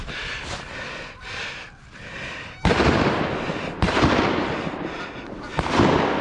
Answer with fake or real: real